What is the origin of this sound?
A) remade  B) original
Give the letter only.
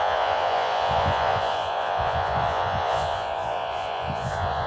A